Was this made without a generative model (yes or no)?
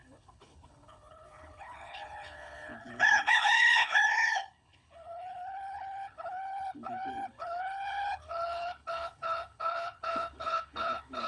no